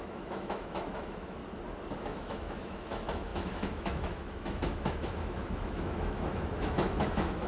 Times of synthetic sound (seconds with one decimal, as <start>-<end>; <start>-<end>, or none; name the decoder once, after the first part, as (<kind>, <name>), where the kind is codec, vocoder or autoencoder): 0.0-1.4 (autoencoder, DAC-VAE); 2.0-7.5